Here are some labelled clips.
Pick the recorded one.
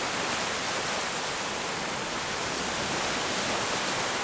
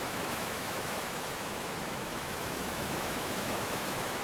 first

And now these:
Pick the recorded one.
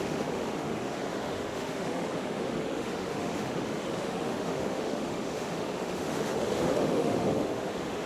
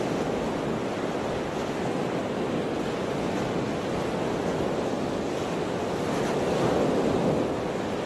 second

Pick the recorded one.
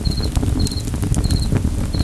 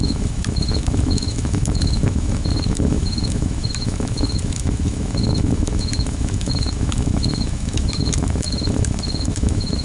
first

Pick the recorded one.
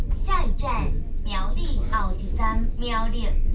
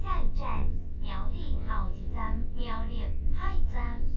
first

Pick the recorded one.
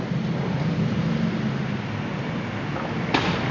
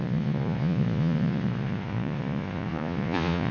first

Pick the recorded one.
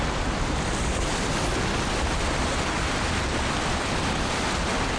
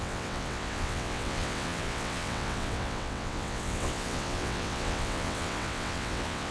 first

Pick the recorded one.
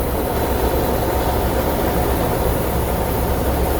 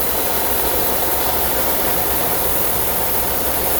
first